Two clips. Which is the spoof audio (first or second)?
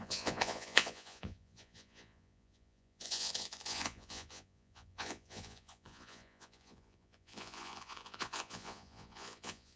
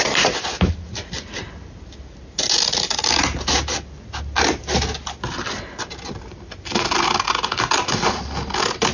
first